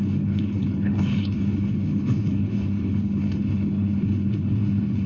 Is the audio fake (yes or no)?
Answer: yes